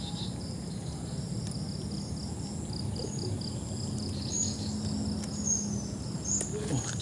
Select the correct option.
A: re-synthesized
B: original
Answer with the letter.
B